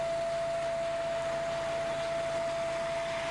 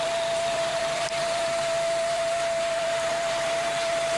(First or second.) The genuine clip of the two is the first